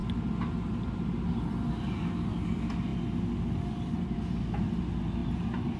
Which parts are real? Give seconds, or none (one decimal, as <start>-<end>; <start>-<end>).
0.0-5.2